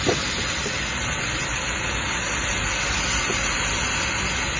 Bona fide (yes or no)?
yes